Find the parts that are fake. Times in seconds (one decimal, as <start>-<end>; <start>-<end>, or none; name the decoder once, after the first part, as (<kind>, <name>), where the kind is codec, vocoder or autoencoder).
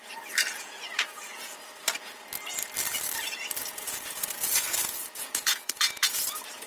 0.5-1.7 (vocoder, Vocos); 3.6-6.2